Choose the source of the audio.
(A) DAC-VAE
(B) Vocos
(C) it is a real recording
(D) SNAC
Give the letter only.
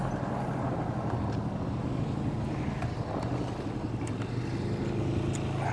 C